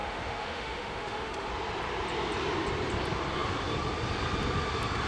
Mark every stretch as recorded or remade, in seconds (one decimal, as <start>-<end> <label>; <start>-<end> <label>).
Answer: 0.0-1.5 remade; 1.5-5.1 recorded